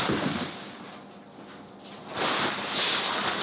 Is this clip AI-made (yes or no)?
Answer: no